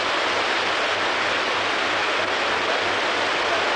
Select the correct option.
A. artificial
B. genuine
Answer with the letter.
B